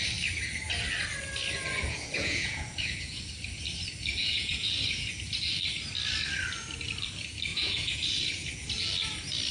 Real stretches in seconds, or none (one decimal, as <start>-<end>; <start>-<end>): 0.0-1.7; 3.2-4.2; 5.1-7.5; 8.7-9.5